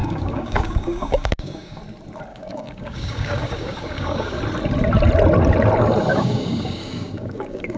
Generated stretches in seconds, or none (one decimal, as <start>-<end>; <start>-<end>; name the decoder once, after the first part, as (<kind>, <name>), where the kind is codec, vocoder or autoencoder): 0.0-1.8 (codec, DAC); 2.3-4.4; 6.1-7.8